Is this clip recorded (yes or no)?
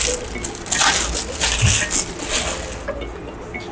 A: yes